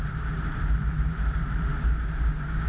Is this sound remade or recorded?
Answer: remade